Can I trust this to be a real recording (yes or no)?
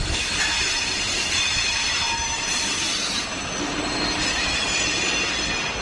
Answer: yes